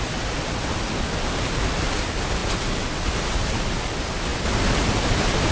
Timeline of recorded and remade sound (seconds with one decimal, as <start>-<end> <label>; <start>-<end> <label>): 0.0-5.5 recorded